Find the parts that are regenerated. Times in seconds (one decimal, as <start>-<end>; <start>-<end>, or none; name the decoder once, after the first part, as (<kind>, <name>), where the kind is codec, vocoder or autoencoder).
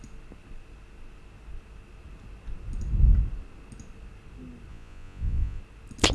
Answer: 4.7-5.6 (vocoder, Vocos)